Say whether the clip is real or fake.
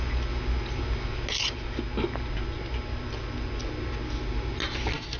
real